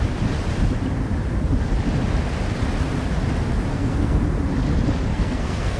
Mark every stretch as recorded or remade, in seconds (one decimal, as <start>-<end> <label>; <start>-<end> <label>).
0.0-3.7 recorded; 3.7-4.2 remade; 4.2-5.1 recorded; 5.1-5.8 remade